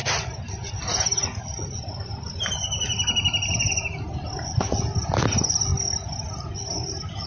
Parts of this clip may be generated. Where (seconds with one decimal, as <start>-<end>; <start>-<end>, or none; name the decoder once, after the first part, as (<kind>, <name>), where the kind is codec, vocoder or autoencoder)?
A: none